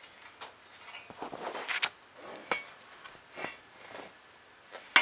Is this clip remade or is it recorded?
recorded